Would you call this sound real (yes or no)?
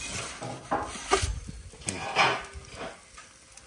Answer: yes